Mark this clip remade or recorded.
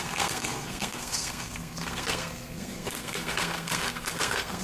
remade